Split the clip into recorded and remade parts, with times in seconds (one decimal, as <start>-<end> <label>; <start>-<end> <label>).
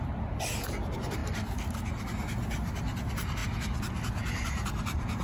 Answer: 0.0-1.2 remade; 1.2-2.8 recorded; 2.8-3.4 remade; 3.4-4.3 recorded; 4.3-5.2 remade